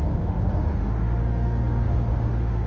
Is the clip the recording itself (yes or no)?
no